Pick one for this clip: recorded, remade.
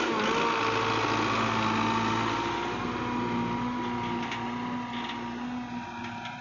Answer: recorded